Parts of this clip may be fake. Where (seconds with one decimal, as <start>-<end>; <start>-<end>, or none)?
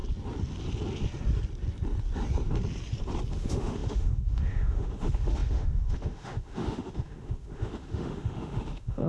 3.3-9.1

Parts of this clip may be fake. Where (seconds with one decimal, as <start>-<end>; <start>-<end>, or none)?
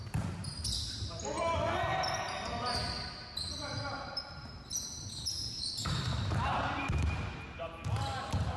none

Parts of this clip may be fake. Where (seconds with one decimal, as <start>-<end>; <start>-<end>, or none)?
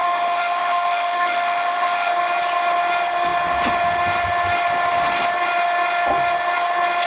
0.0-2.1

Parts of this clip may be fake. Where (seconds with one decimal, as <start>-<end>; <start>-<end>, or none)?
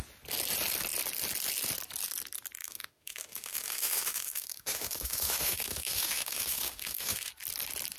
2.6-7.3